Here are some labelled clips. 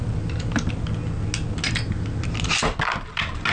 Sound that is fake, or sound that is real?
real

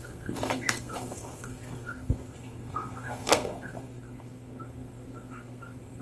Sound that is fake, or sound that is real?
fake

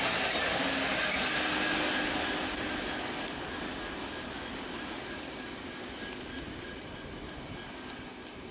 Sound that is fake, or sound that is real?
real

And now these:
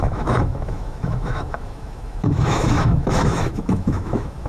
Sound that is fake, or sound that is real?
fake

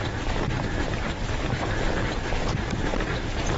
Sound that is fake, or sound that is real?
real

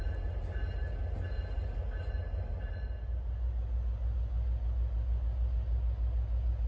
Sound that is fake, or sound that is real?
real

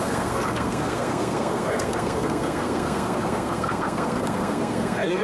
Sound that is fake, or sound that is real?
fake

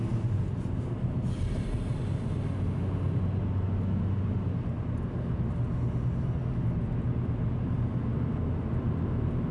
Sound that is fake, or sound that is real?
real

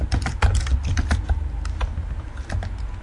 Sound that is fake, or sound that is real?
real